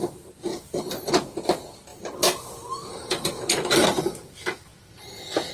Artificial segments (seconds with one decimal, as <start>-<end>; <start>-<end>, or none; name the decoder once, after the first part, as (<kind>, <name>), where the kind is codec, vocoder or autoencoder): 0.5-1.1 (vocoder, BigVGAN v2); 1.9-4.0